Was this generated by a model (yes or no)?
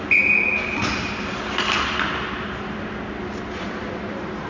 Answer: no